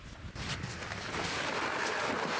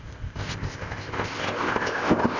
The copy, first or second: second